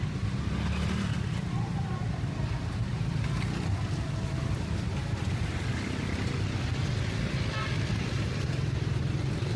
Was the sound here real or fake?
real